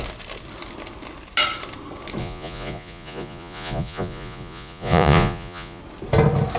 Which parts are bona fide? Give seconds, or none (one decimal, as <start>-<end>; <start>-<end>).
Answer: 0.0-2.2; 5.8-6.6